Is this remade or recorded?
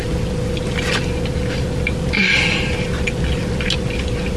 recorded